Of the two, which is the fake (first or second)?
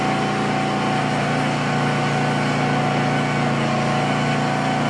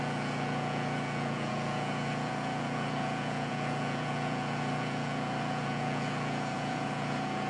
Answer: second